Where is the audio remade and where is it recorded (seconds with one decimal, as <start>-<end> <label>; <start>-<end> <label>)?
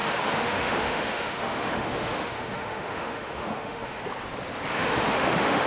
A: 0.0-4.0 remade; 4.0-4.7 recorded; 4.7-5.7 remade